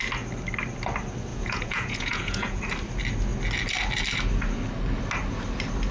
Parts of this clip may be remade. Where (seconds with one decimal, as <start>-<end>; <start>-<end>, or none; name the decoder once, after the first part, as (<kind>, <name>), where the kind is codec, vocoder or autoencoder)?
1.3-2.6 (vocoder, Vocos)